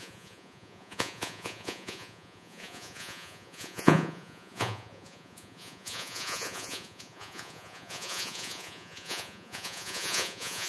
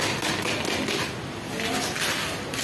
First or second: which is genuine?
second